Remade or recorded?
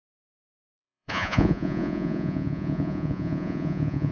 remade